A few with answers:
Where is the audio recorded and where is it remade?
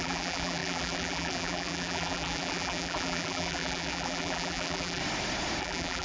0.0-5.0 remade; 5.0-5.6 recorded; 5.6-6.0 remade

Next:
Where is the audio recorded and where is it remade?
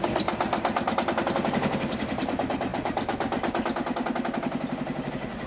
0.0-5.5 recorded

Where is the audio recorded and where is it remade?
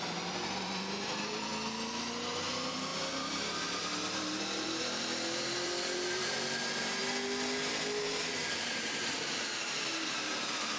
0.0-1.5 remade; 1.5-2.3 recorded; 2.3-7.0 remade; 7.0-7.7 recorded; 7.7-10.8 remade